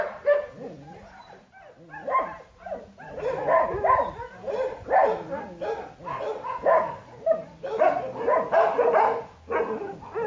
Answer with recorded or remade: recorded